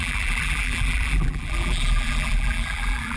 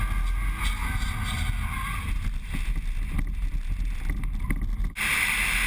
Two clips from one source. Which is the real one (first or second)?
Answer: second